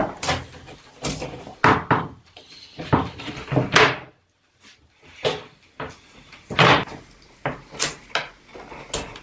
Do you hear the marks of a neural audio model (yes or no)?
no